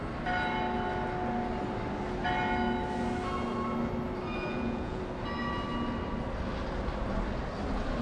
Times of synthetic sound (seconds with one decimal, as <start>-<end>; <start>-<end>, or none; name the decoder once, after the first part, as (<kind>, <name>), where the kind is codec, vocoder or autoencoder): 4.3-5.0 (vocoder, Vocos)